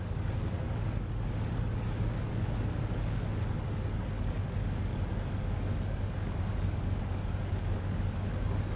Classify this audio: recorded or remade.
remade